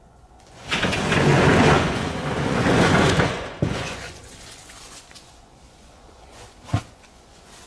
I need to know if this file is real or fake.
fake